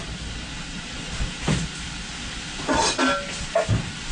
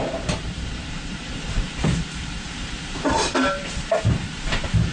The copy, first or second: second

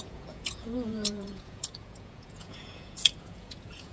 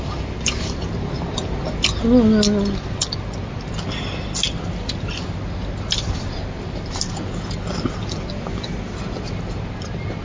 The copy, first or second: first